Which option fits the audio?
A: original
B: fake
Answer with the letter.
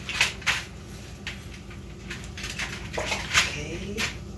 A